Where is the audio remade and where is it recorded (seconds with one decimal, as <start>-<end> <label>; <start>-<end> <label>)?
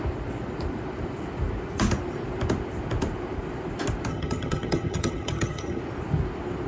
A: 0.0-4.1 recorded; 4.1-5.8 remade; 5.8-6.7 recorded